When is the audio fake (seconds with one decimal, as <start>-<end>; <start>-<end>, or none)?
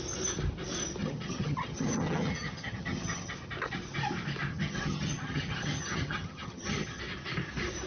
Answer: 1.0-3.3; 4.5-7.0